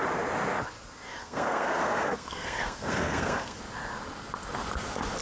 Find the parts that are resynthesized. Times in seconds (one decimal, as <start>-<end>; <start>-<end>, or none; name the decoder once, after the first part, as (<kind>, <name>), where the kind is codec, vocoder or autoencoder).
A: 1.2-3.6 (codec, SNAC)